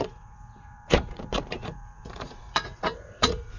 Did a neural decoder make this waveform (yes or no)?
yes